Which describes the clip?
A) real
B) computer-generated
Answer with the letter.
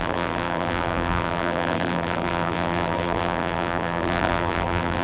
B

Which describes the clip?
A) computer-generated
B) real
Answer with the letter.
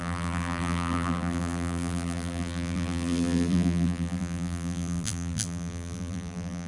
A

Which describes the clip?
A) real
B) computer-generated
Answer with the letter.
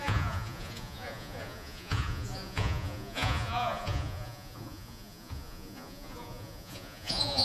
B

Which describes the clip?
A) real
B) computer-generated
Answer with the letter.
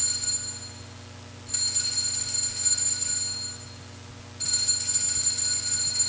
A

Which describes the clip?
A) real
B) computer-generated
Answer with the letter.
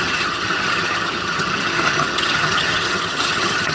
B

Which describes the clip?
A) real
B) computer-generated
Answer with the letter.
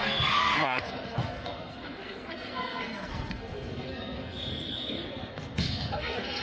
B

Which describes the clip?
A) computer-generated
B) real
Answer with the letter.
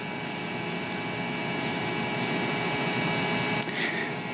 B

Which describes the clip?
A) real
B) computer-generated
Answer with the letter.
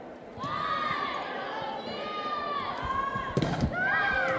A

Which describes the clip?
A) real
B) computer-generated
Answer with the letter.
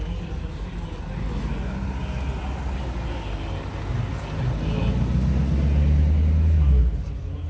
A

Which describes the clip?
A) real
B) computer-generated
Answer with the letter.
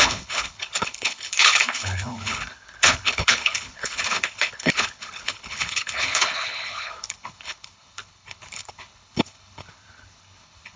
B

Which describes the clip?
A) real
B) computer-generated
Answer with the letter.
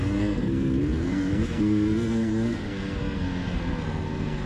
B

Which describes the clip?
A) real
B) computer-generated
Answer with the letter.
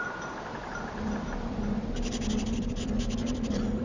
B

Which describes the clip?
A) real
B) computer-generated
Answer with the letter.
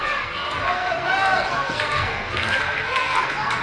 B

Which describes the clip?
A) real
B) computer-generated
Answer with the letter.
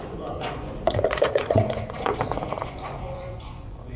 B